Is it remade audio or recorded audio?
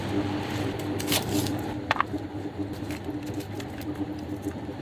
remade